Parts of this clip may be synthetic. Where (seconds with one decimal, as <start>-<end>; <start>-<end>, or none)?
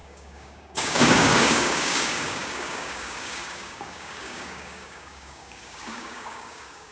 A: 0.0-6.9